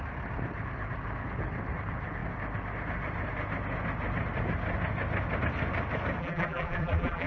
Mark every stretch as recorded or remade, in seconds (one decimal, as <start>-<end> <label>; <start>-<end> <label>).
0.0-6.2 recorded; 6.2-7.3 remade